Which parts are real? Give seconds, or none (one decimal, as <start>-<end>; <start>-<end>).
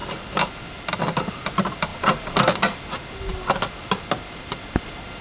0.0-5.2